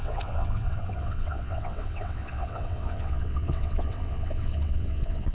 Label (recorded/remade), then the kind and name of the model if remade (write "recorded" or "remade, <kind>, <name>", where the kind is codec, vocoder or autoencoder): remade, vocoder, WaveNeXt